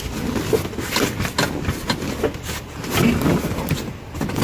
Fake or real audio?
real